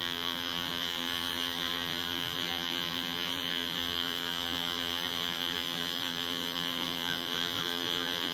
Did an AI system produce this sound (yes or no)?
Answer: yes